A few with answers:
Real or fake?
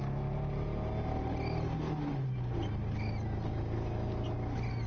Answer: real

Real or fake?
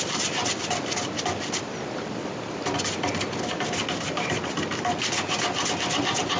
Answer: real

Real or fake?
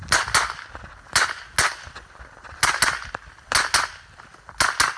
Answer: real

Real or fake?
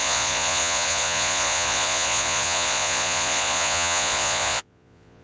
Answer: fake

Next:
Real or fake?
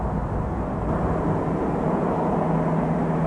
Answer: real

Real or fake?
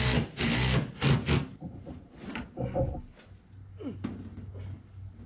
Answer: real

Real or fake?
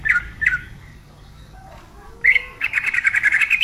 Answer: fake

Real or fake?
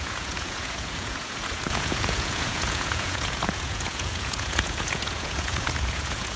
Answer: fake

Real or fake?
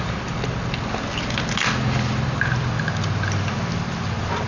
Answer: real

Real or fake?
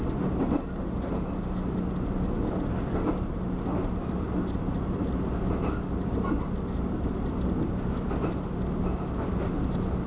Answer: real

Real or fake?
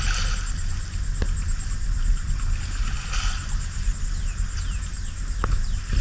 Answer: real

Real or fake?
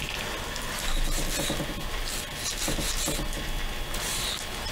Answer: real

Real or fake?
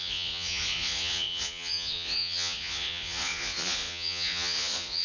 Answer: fake